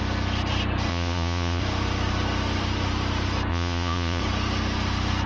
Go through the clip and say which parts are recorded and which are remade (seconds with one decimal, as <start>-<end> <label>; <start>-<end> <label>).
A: 0.0-0.9 recorded; 0.9-1.6 remade; 1.6-3.5 recorded; 3.5-4.2 remade; 4.2-5.3 recorded